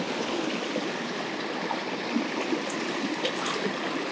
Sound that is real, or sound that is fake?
fake